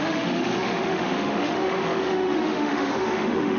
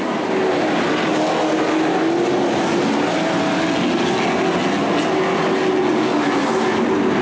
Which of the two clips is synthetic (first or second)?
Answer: first